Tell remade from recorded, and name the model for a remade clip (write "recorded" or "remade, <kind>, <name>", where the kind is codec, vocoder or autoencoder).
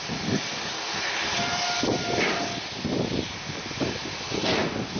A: recorded